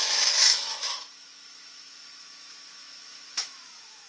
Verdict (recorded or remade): remade